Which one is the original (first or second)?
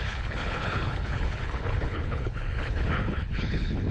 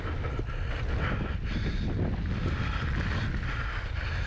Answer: second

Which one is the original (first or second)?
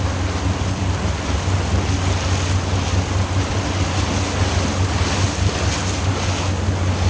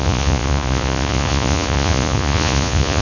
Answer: first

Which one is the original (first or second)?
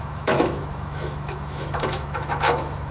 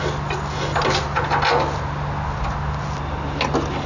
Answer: second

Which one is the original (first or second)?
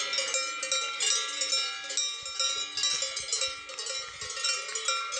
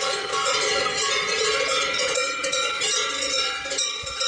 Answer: first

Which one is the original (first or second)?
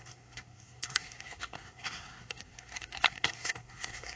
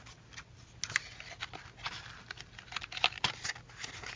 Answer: second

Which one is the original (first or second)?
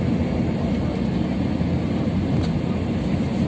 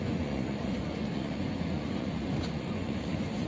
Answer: first